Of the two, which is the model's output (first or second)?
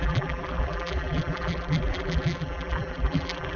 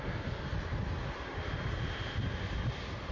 first